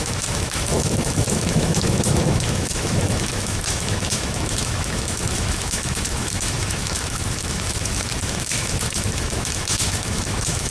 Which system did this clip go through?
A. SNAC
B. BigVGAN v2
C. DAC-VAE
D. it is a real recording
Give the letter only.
C